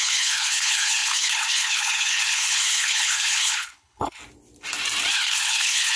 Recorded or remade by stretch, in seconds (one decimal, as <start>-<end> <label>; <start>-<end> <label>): 0.0-4.2 remade; 4.2-5.1 recorded; 5.1-6.0 remade